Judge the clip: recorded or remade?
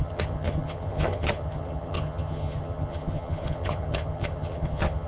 remade